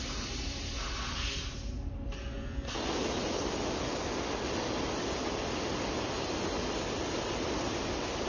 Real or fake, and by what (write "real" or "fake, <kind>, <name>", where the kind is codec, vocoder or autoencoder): real